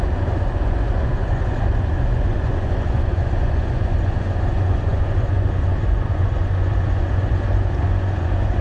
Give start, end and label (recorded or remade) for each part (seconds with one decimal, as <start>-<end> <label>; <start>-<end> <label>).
0.0-8.6 remade